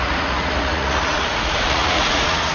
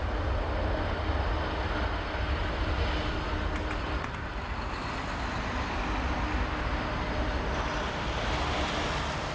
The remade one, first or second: first